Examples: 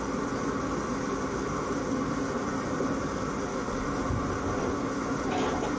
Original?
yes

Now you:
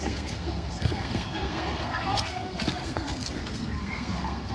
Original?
no